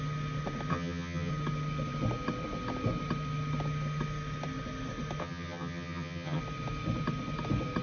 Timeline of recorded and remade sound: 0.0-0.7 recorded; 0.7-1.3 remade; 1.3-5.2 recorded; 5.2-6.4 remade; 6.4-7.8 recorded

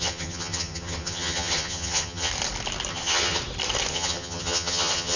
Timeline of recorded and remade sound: 0.0-2.3 remade; 2.3-2.9 recorded; 2.9-3.4 remade; 3.4-3.9 recorded; 3.9-5.2 remade

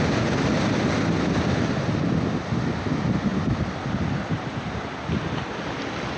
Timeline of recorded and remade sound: 0.0-6.2 recorded

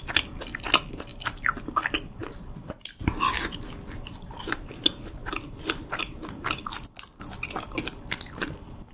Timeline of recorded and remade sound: 0.0-8.9 recorded

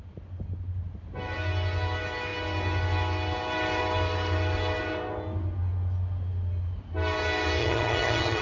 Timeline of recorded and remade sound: 0.0-7.6 recorded; 7.6-8.4 remade

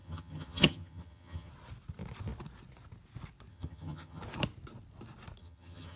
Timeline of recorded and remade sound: 0.0-1.5 remade; 1.5-3.5 recorded; 3.5-4.2 remade; 4.2-5.4 recorded; 5.4-6.0 remade

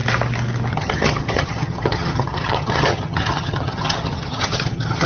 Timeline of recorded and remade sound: 0.0-0.7 recorded; 0.7-5.1 remade

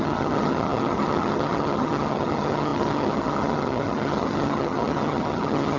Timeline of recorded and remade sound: 0.0-5.8 remade